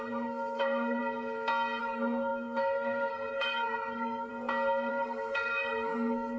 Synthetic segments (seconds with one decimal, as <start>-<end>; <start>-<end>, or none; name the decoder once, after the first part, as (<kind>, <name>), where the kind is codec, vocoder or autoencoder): 0.0-1.0 (codec, SNAC); 1.8-4.3; 4.9-6.4